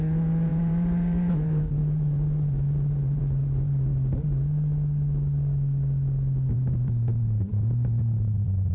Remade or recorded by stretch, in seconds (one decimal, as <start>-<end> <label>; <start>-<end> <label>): 0.0-3.9 remade; 3.9-6.5 recorded; 6.5-8.7 remade

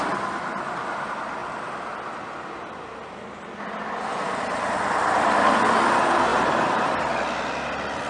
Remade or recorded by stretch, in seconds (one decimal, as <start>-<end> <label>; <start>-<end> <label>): 0.0-6.3 recorded; 6.3-7.0 remade; 7.0-8.1 recorded

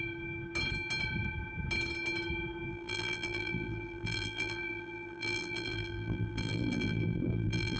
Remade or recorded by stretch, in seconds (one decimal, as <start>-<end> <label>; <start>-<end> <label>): 0.0-2.7 recorded; 2.7-7.8 remade

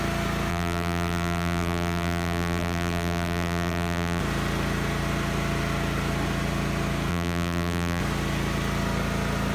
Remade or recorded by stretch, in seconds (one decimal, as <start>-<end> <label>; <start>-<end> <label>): 0.0-0.5 recorded; 0.5-4.2 remade; 4.2-7.1 recorded; 7.1-8.0 remade; 8.0-9.5 recorded

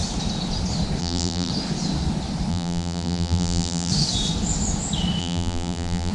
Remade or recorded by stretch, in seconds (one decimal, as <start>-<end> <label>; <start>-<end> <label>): 0.0-1.0 recorded; 1.0-1.5 remade; 1.5-2.5 recorded; 2.5-3.9 remade; 3.9-5.2 recorded; 5.2-6.1 remade

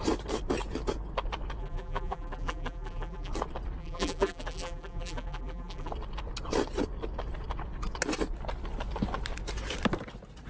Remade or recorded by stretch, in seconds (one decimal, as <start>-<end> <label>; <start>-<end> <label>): 0.0-1.6 recorded; 1.6-3.3 remade; 3.3-3.8 recorded; 3.8-5.9 remade; 5.9-10.5 recorded

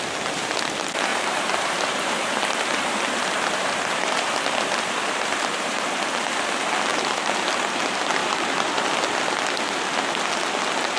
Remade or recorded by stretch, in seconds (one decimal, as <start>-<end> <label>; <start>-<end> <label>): 0.0-1.1 recorded; 1.1-6.0 remade; 6.0-6.9 recorded; 6.9-7.5 remade; 7.5-8.2 recorded; 8.2-8.8 remade; 8.8-11.0 recorded